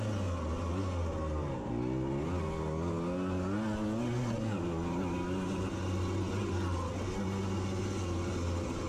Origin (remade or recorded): recorded